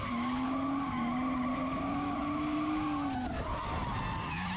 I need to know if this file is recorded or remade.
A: recorded